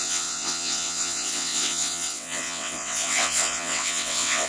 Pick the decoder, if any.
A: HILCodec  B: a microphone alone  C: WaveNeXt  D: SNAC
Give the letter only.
C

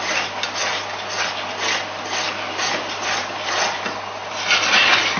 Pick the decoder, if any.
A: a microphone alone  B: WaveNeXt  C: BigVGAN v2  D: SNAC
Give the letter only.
A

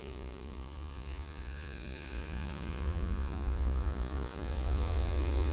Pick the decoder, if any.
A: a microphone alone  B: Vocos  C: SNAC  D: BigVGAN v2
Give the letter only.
B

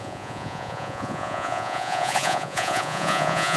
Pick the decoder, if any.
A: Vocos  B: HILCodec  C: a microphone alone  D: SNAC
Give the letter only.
A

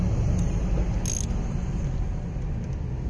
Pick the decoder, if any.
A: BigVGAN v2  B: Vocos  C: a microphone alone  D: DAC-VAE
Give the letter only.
C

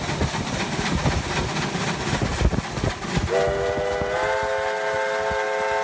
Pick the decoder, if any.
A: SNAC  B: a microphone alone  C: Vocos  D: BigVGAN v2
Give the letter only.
B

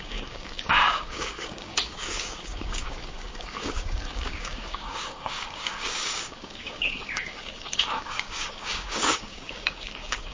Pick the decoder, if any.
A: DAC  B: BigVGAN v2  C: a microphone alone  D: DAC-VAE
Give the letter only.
A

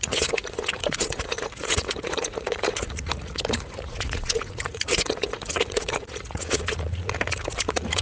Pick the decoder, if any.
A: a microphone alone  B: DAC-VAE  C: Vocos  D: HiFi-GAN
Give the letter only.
C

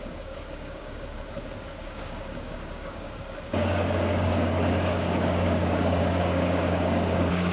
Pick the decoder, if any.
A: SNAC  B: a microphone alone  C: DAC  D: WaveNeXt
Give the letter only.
C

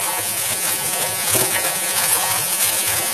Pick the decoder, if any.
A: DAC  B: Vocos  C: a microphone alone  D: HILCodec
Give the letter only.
B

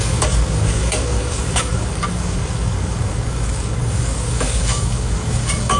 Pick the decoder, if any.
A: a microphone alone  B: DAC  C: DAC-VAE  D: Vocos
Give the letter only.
B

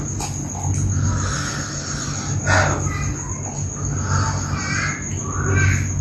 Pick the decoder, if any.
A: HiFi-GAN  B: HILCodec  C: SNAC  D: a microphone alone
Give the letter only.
D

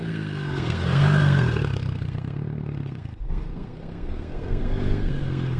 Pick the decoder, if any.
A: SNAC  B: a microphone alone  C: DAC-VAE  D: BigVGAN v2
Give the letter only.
A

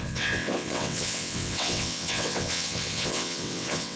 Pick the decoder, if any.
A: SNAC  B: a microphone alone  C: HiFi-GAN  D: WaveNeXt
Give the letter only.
D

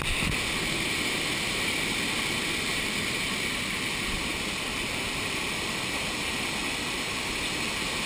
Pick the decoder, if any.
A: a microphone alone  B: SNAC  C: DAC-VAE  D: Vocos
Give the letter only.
A